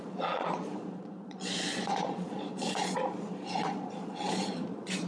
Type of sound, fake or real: fake